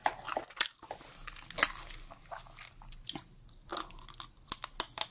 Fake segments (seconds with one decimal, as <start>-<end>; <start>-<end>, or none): none